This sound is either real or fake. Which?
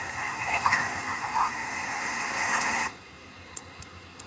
fake